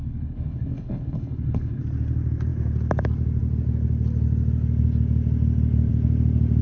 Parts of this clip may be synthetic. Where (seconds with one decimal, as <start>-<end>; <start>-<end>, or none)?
0.0-1.8